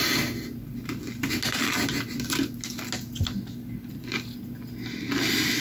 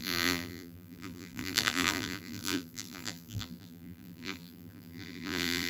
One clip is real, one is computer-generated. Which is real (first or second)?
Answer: first